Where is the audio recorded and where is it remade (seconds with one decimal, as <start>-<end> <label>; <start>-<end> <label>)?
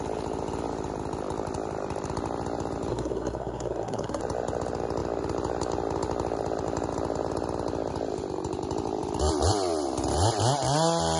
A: 0.0-2.9 recorded; 2.9-4.2 remade; 4.2-11.2 recorded